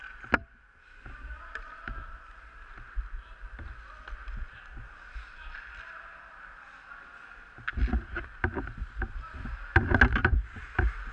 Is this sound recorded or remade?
recorded